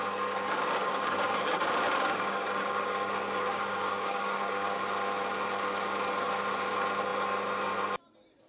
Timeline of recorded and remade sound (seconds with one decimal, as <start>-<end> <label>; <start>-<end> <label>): 0.0-4.8 remade; 4.8-8.5 recorded